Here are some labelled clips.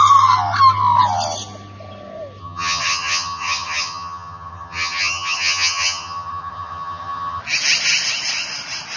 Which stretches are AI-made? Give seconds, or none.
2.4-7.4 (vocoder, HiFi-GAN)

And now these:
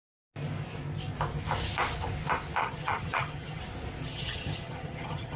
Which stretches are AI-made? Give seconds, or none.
2.6-3.6 (vocoder, HiFi-GAN); 4.0-5.4

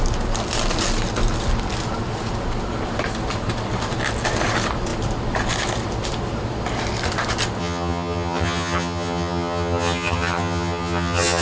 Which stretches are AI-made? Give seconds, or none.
7.6-11.4 (vocoder, HiFi-GAN)

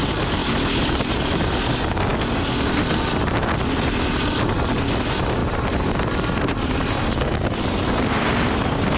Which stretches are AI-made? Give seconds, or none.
none

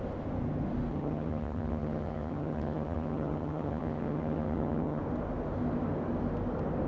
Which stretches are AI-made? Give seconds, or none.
0.9-5.0 (vocoder, HiFi-GAN)

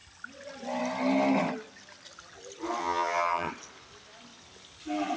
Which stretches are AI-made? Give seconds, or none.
2.8-3.5 (vocoder, HiFi-GAN)

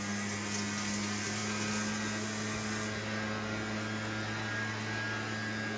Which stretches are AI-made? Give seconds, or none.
none